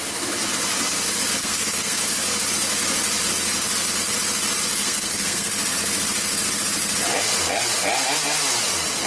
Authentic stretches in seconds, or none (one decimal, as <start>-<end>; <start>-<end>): 0.0-1.4; 2.0-4.8; 5.5-9.1